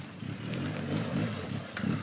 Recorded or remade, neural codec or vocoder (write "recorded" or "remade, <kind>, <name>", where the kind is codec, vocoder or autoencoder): recorded